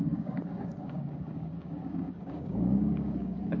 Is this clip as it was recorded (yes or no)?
no